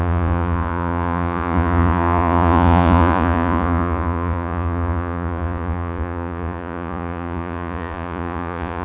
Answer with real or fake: fake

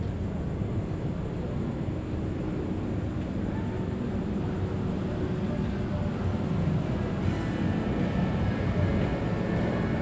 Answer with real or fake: real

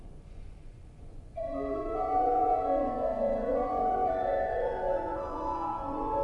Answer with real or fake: fake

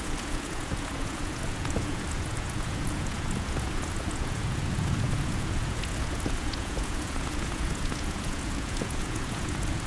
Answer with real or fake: fake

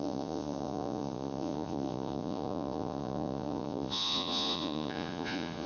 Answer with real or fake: fake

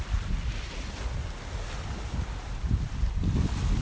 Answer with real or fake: real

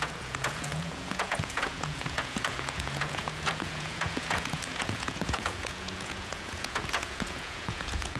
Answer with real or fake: fake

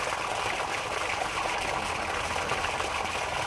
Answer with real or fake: real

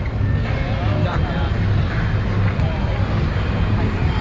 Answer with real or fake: real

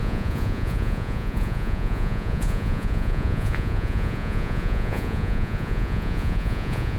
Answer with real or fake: fake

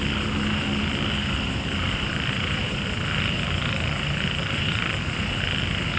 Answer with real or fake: real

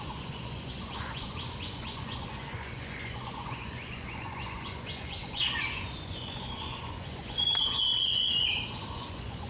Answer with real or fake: fake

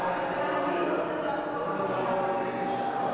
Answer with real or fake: real